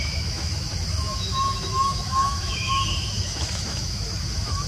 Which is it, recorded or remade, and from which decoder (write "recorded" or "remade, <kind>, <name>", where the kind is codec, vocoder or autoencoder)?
remade, autoencoder, DAC-VAE